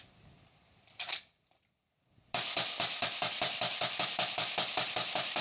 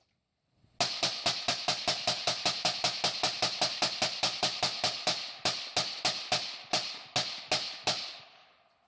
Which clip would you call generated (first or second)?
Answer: first